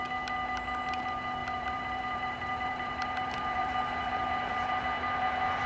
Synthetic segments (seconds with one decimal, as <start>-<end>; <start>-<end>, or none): 1.4-4.8